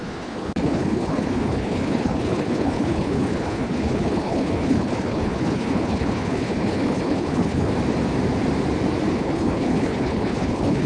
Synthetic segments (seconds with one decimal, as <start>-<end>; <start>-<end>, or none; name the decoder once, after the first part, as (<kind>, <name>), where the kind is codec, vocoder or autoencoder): 0.0-7.7 (codec, HILCodec); 9.1-10.9